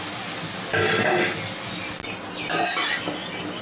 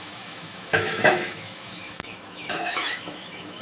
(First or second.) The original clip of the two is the first